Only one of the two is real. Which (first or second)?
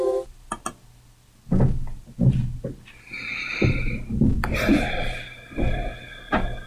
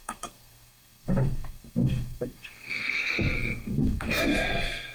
first